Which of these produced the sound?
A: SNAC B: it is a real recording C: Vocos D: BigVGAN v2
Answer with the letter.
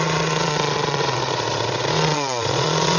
C